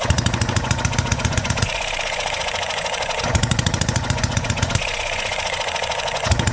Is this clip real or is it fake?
fake